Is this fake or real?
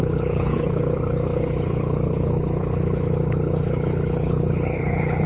fake